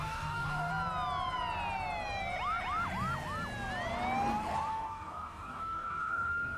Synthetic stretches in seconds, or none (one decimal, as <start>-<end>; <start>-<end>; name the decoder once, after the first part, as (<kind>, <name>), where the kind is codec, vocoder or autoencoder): 0.0-0.7 (codec, DAC); 4.7-6.6